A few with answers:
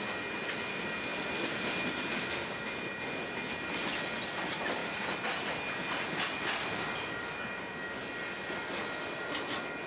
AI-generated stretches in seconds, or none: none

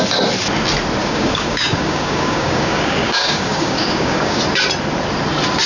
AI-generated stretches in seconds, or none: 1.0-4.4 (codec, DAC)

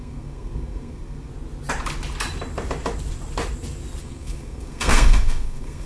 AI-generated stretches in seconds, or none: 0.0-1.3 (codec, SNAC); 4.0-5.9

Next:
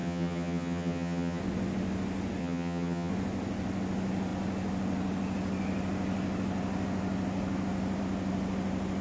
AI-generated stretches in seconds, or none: 0.0-1.4 (vocoder, HiFi-GAN); 2.4-3.1

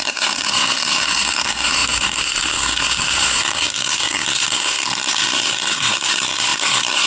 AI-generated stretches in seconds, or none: 0.0-7.1 (codec, SNAC)

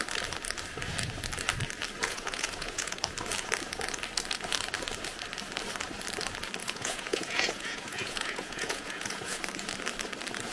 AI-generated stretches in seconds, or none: 2.0-3.0 (vocoder, Vocos); 6.6-9.4

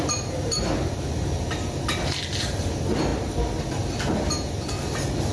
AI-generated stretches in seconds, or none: none

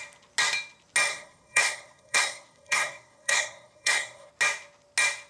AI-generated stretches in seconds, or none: 1.1-4.3 (codec, SNAC)